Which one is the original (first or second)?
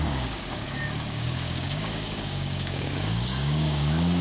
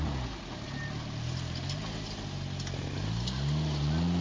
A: second